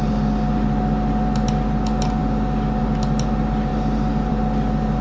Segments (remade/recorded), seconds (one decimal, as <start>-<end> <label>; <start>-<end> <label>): 0.0-5.0 recorded